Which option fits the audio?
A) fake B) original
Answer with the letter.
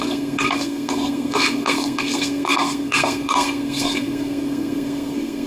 A